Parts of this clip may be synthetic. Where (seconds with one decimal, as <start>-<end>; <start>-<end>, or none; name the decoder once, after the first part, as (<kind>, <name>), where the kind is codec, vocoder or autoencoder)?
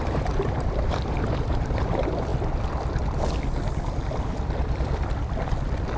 0.0-2.3 (vocoder, BigVGAN v2)